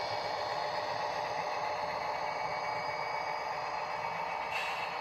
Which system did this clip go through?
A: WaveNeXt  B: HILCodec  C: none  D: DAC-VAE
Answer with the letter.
C